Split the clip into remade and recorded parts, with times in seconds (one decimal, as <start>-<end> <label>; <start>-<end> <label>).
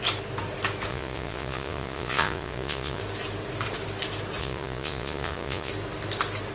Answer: 0.0-0.9 recorded; 0.9-3.0 remade; 3.0-4.4 recorded; 4.4-5.7 remade; 5.7-6.5 recorded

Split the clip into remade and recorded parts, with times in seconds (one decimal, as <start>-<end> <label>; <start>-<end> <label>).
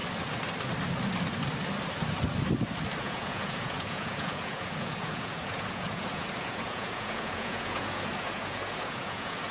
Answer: 0.0-3.0 recorded; 3.0-9.5 remade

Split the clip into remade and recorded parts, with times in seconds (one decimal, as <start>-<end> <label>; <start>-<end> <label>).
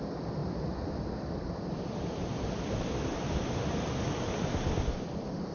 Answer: 0.0-5.5 recorded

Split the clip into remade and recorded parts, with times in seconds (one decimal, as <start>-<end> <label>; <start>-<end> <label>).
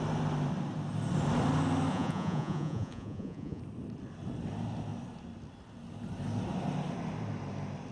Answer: 0.0-1.9 recorded; 1.9-3.6 remade; 3.6-7.9 recorded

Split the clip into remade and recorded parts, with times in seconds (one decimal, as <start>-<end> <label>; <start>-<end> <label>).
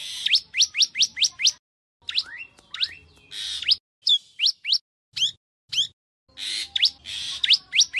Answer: 0.0-8.0 recorded